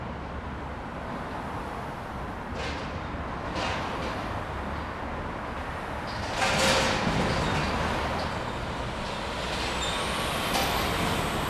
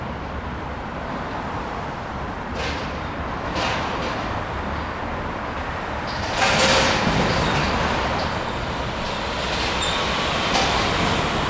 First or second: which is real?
first